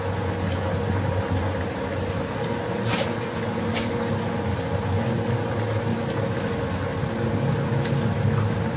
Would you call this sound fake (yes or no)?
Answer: no